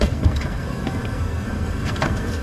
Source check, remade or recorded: remade